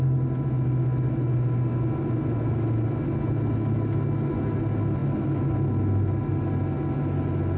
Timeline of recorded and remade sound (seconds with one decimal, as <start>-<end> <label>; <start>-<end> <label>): 0.0-7.6 recorded